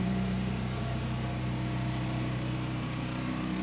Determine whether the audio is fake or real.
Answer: fake